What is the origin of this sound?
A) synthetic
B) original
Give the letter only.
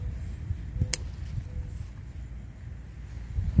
B